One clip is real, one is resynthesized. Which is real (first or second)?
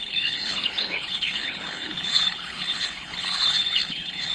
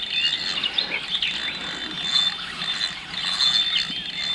second